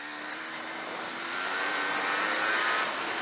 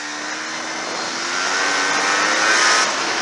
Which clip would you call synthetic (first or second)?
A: first